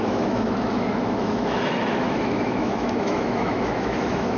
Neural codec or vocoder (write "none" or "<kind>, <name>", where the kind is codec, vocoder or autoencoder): autoencoder, DAC-VAE